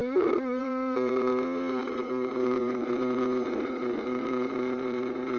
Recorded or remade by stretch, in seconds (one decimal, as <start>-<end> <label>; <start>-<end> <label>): 0.0-1.3 remade; 1.3-1.8 recorded; 1.8-5.4 remade